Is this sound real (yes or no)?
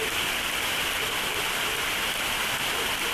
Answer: yes